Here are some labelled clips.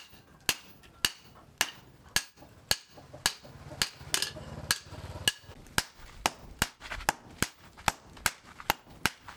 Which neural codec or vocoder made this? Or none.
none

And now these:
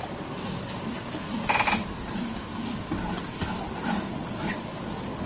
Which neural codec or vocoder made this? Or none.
none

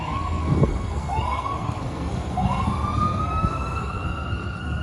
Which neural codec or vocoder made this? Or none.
codec, SNAC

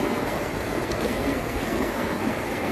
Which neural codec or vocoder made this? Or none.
codec, SNAC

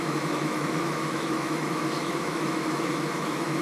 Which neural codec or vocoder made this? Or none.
autoencoder, DAC-VAE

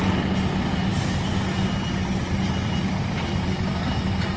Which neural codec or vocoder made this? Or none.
none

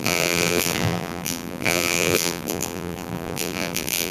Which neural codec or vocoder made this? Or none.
vocoder, BigVGAN v2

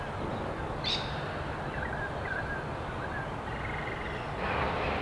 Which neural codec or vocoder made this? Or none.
none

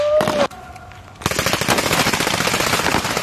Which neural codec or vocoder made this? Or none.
none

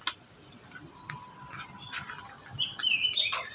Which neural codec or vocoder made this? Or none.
none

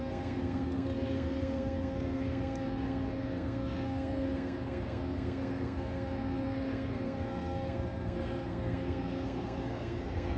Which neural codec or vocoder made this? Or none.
codec, SNAC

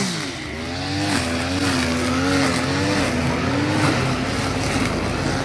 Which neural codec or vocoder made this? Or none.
none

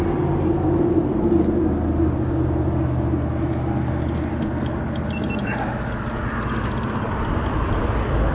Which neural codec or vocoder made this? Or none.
none